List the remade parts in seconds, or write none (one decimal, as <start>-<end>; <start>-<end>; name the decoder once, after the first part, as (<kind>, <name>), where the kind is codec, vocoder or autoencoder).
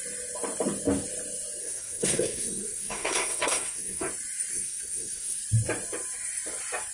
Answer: 1.6-4.1 (codec, SNAC); 4.5-5.4